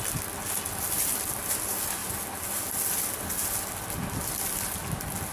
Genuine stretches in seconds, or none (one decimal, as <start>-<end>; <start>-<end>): 0.0-5.3